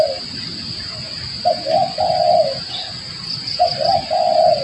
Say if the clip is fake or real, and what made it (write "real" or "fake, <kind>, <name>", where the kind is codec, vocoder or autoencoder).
real